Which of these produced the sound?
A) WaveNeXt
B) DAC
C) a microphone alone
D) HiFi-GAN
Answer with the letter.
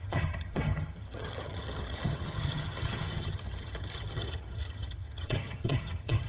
D